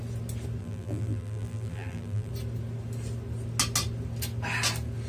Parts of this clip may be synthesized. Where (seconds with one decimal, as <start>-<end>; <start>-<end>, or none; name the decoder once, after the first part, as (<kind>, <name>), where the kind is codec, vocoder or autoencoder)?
0.6-2.3 (vocoder, BigVGAN v2)